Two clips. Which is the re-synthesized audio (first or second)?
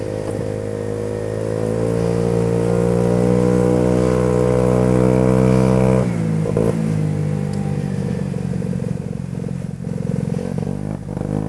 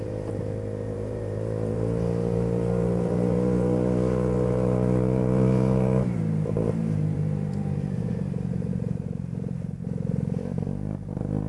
second